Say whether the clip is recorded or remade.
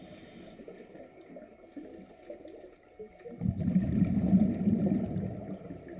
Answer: recorded